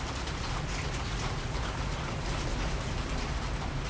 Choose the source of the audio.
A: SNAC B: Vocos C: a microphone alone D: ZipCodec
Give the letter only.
C